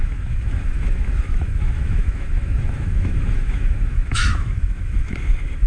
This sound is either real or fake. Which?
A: fake